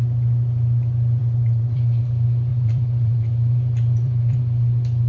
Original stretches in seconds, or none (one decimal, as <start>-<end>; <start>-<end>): 0.0-1.2; 2.0-2.5; 4.4-5.1